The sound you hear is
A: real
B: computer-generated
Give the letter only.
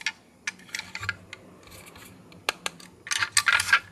A